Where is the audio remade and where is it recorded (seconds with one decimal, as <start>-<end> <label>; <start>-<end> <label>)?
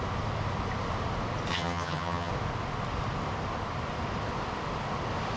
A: 0.0-1.5 recorded; 1.5-2.3 remade; 2.3-5.4 recorded